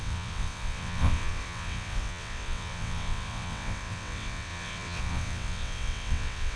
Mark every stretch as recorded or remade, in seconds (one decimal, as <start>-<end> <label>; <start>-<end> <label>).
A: 0.0-6.6 remade